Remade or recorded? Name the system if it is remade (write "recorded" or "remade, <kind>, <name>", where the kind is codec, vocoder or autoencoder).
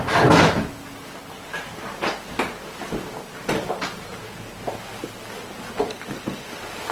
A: recorded